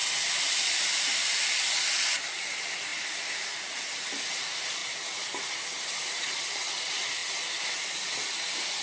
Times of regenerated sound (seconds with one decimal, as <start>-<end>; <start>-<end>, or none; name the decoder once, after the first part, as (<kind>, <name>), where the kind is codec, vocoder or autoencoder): 0.0-4.8 (vocoder, BigVGAN v2); 5.5-8.8